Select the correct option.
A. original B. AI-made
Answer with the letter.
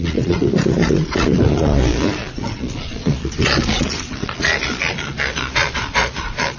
B